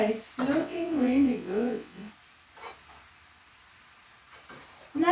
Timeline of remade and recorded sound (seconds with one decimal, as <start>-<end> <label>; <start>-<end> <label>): 0.0-0.6 recorded; 0.6-2.1 remade; 2.1-5.1 recorded